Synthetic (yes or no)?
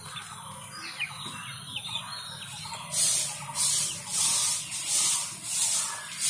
no